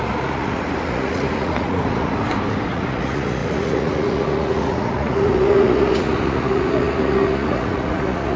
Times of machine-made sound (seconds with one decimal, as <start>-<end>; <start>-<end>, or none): 0.0-2.2; 2.7-8.4